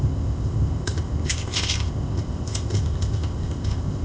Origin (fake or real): fake